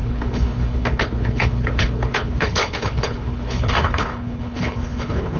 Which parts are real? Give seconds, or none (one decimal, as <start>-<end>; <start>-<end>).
none